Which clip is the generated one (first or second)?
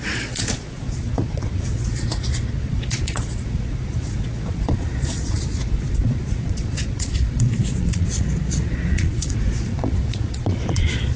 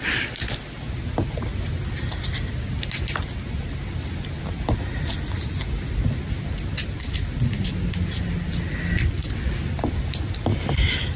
first